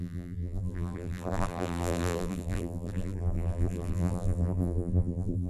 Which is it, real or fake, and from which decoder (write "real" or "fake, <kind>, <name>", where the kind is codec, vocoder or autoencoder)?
fake, vocoder, BigVGAN v2